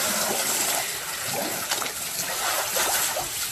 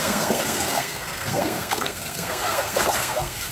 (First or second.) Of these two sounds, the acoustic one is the first